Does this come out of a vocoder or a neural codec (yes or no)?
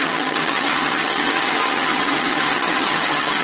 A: yes